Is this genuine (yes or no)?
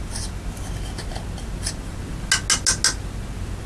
yes